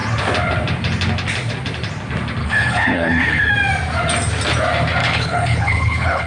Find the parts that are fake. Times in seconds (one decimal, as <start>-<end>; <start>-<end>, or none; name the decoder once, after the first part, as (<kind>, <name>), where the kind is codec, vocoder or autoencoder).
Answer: 2.4-3.5 (codec, HILCodec); 5.0-6.3